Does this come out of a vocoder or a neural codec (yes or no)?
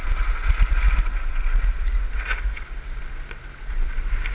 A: no